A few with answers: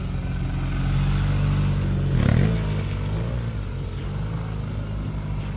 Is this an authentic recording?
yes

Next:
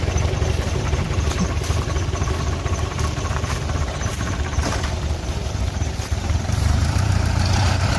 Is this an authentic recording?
no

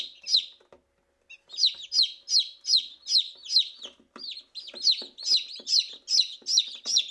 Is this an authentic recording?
yes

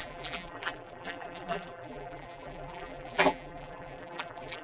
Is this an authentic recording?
no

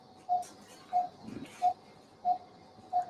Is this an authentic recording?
yes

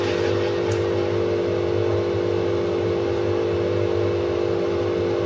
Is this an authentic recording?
yes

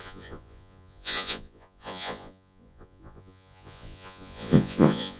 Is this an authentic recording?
no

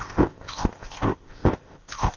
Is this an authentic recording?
no